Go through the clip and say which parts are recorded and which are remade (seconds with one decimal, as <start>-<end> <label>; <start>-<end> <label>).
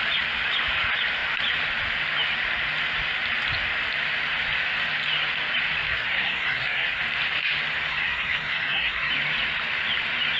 0.0-5.9 recorded; 5.9-7.0 remade; 7.0-7.9 recorded; 7.9-9.1 remade; 9.1-10.4 recorded